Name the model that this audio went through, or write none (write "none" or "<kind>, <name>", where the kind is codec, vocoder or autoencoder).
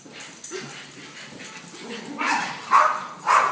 none